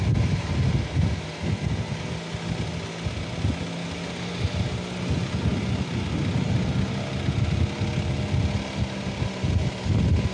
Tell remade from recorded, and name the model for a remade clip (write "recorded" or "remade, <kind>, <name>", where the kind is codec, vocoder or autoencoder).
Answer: recorded